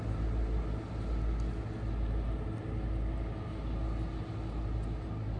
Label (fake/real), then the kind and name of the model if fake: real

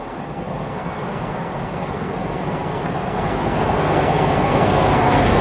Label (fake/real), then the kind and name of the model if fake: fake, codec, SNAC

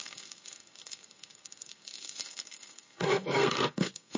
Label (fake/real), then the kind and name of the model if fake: fake, codec, SNAC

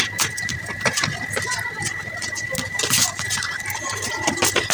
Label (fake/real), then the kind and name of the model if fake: real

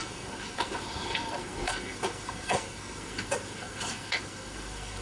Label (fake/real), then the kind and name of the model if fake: fake, codec, SNAC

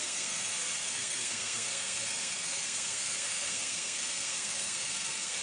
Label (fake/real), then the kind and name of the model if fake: fake, codec, SNAC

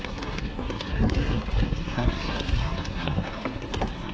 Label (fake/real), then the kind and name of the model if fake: fake, codec, SNAC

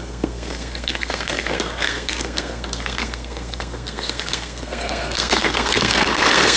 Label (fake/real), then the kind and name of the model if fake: fake, codec, SNAC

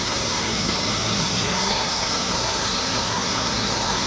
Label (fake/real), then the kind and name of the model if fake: fake, codec, SNAC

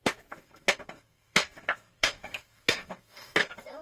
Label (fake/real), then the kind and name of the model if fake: fake, codec, SNAC